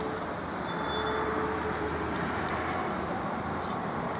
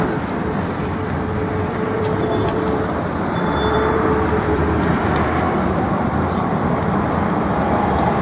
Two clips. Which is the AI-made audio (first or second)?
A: second